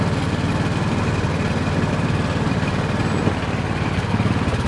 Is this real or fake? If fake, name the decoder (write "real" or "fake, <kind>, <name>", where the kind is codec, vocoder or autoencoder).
real